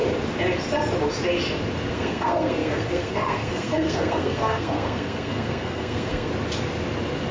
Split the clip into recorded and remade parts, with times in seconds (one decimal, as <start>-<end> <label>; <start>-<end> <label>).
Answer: 0.0-1.9 recorded; 1.9-6.3 remade; 6.3-7.3 recorded